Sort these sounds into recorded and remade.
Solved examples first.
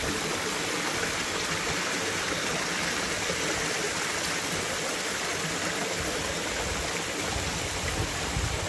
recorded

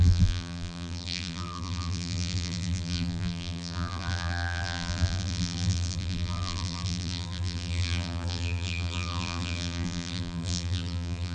remade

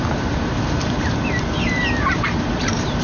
remade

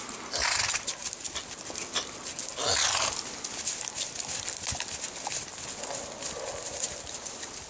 recorded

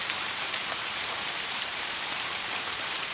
remade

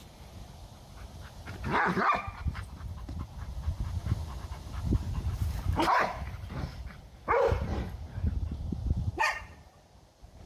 remade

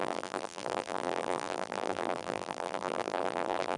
remade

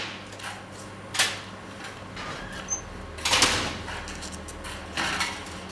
recorded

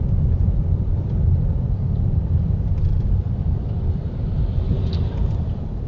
remade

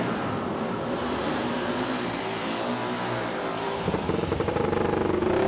remade